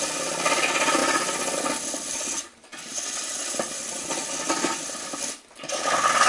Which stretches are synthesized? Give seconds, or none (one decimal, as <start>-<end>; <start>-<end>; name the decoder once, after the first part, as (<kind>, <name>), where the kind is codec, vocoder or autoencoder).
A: none